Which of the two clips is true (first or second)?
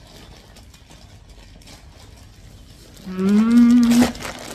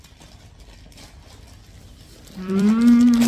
first